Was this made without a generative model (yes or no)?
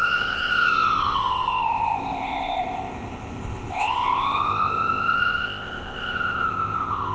no